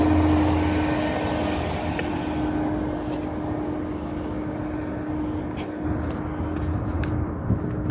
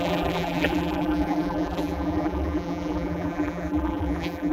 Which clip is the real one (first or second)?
first